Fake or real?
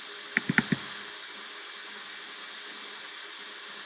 real